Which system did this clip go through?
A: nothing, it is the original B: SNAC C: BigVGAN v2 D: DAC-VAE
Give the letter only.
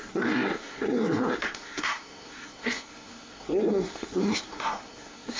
B